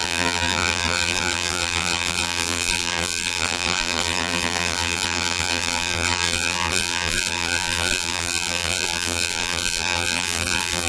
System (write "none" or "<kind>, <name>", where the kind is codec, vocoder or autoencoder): vocoder, BigVGAN v2